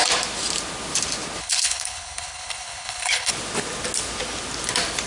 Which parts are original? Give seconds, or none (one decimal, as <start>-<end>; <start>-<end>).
0.0-1.4; 3.3-5.1